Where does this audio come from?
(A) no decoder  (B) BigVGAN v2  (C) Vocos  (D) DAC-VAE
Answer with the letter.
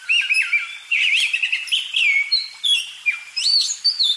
B